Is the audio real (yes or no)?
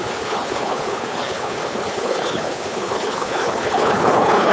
no